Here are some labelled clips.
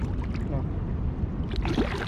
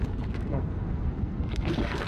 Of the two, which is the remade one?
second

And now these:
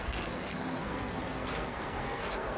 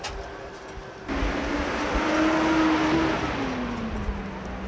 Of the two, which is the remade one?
first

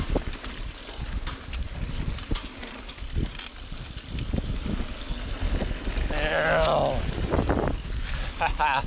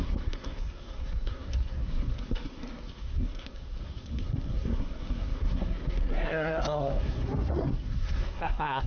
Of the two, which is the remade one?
second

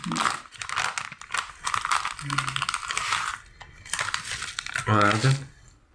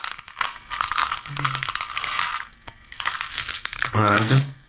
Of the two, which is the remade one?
second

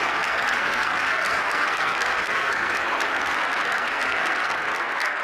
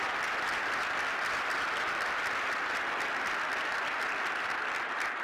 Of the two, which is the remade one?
first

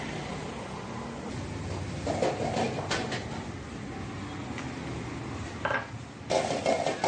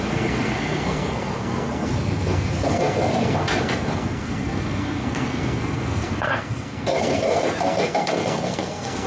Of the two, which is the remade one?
second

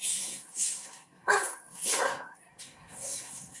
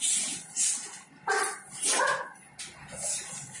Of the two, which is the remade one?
first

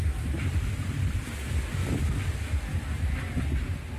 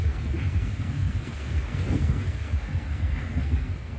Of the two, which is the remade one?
second